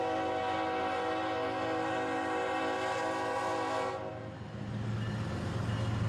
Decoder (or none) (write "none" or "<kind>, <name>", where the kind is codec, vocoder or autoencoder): none